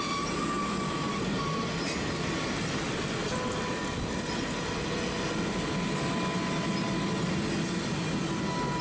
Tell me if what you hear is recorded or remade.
recorded